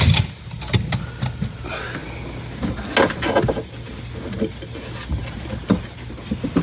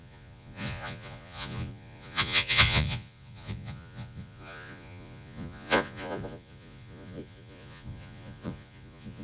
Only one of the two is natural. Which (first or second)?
first